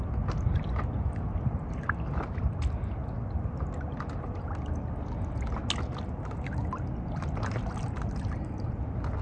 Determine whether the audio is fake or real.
real